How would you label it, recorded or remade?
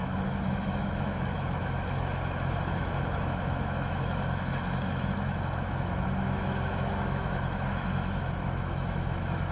remade